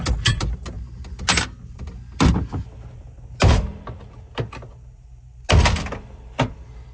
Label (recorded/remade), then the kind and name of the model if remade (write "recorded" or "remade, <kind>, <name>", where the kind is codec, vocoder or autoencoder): recorded